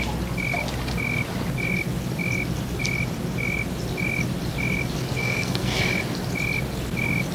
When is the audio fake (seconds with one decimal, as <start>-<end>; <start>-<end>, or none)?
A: 5.2-5.8